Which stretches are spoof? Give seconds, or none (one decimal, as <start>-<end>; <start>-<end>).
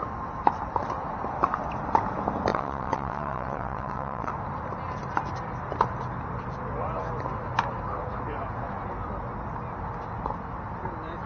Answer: 2.5-4.3